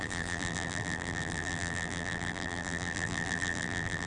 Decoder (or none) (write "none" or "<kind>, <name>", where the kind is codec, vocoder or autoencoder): vocoder, BigVGAN v2